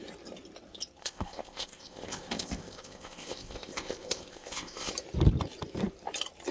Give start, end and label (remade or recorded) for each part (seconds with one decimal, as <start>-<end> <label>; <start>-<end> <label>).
0.0-1.0 recorded; 1.0-4.9 remade; 4.9-6.5 recorded